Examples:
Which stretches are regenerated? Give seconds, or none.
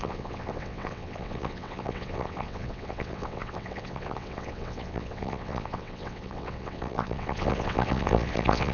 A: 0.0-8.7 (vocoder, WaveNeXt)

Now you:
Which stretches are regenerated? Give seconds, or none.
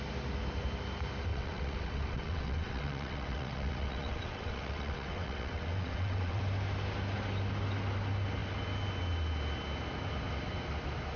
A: 1.3-6.4 (vocoder, WaveNeXt)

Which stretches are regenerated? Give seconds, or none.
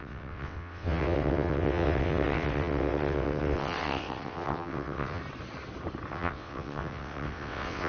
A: 0.0-5.2 (vocoder, WaveNeXt); 6.1-7.9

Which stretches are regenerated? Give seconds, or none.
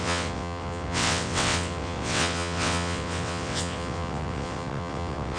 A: 0.0-5.4 (vocoder, WaveNeXt)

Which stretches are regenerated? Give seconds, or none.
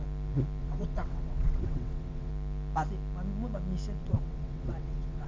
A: 0.6-2.3 (vocoder, WaveNeXt); 4.0-5.3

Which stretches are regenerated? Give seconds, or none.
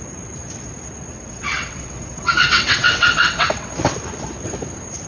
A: 1.1-3.7 (vocoder, WaveNeXt)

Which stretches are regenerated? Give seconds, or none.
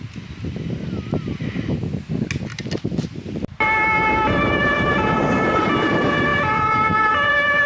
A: none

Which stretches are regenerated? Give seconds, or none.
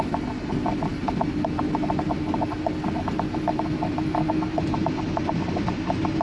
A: none